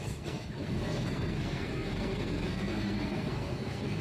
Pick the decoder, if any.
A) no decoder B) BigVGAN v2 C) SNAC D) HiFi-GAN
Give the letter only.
C